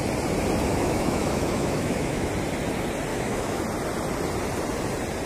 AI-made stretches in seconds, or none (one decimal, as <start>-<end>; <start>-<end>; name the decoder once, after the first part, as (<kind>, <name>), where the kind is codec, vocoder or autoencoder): 0.7-2.3 (autoencoder, DAC-VAE); 3.1-3.6